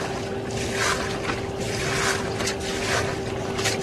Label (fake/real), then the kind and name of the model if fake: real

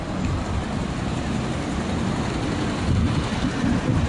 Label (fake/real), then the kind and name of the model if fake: real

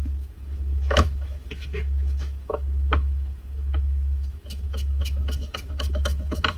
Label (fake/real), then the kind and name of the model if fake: fake, autoencoder, DAC-VAE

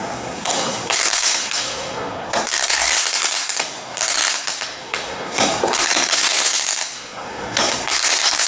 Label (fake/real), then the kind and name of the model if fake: fake, codec, SNAC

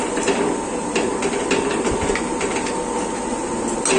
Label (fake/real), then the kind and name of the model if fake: real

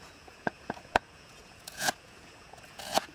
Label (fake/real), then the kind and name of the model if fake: fake, vocoder, Vocos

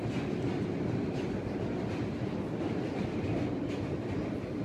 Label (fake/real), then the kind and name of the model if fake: real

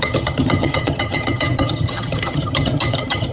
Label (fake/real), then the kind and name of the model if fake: fake, vocoder, HiFi-GAN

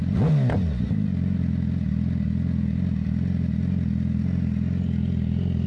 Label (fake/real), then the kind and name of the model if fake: real